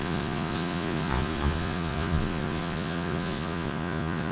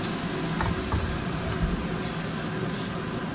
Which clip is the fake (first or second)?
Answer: first